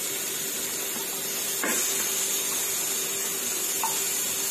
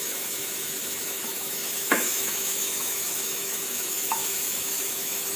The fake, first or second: second